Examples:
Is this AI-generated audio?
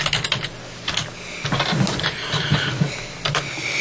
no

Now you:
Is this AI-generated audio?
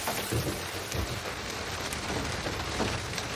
no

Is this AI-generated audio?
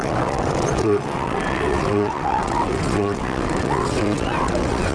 yes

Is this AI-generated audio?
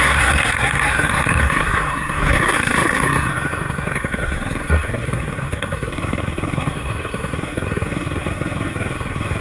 yes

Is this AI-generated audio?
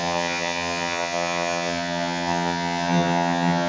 yes